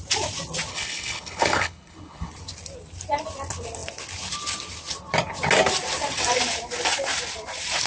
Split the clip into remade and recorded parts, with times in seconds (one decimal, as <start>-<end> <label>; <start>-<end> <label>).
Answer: 0.0-0.7 recorded; 0.7-2.3 remade; 2.3-7.9 recorded